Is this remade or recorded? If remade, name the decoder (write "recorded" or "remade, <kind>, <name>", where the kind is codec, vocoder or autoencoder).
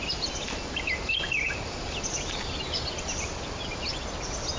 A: recorded